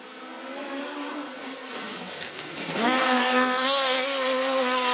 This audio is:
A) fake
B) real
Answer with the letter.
A